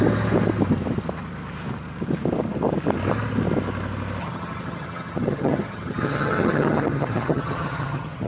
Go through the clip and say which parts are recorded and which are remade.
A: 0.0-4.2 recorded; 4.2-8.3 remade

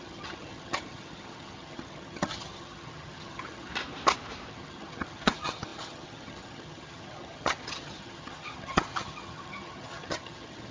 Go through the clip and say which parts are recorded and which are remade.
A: 0.0-3.7 remade; 3.7-4.5 recorded; 4.5-10.7 remade

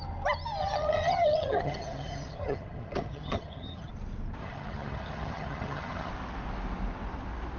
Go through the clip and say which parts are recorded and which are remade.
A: 0.0-0.6 recorded; 0.6-3.9 remade; 3.9-4.4 recorded; 4.4-6.1 remade; 6.1-7.6 recorded

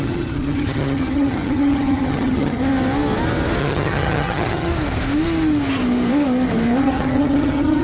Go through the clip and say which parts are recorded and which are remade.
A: 0.0-2.6 remade; 2.6-3.6 recorded; 3.6-4.7 remade; 4.7-6.8 recorded; 6.8-7.8 remade

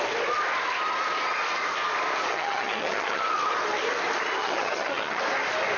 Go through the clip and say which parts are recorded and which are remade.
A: 0.0-2.3 recorded; 2.3-3.3 remade; 3.3-4.4 recorded; 4.4-5.2 remade; 5.2-5.8 recorded

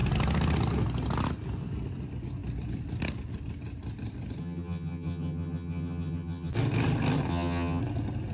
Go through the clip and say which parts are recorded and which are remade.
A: 0.0-4.4 recorded; 4.4-6.5 remade; 6.5-7.3 recorded; 7.3-7.8 remade; 7.8-8.3 recorded

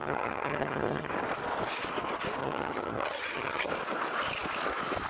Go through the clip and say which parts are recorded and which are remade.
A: 0.0-1.1 remade; 1.1-2.4 recorded; 2.4-3.7 remade; 3.7-5.1 recorded

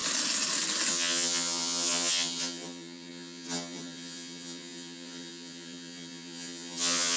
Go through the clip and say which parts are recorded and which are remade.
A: 0.0-0.9 recorded; 0.9-7.2 remade